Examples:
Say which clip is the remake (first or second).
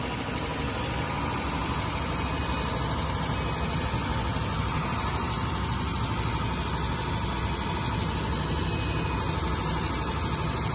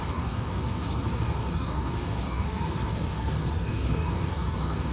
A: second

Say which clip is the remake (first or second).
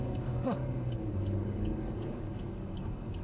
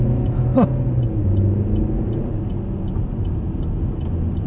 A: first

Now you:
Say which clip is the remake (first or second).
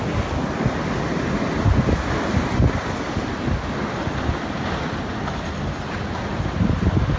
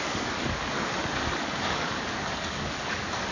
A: second